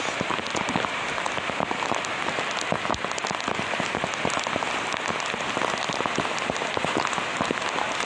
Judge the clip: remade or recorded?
recorded